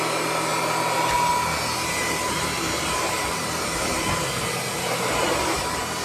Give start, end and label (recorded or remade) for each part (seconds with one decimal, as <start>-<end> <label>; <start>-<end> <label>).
0.0-2.0 recorded; 2.0-5.6 remade; 5.6-6.0 recorded